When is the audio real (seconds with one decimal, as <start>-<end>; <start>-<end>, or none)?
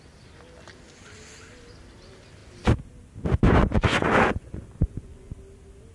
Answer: 0.0-3.6; 5.3-5.9